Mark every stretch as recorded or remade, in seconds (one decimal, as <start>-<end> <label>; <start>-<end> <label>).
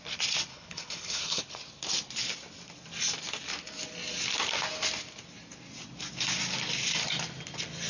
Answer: 0.0-0.5 recorded; 0.5-1.4 remade; 1.4-7.9 recorded